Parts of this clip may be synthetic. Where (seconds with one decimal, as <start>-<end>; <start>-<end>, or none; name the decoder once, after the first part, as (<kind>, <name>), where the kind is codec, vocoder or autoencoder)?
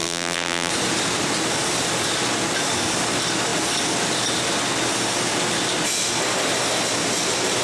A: 0.0-0.7 (vocoder, BigVGAN v2)